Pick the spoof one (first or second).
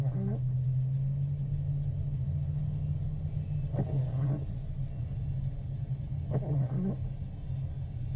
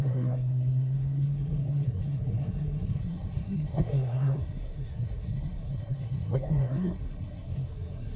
second